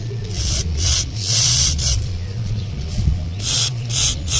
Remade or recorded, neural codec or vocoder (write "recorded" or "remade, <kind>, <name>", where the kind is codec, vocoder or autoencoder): remade, vocoder, Vocos